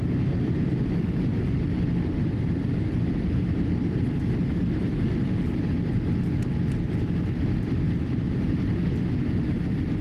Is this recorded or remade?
recorded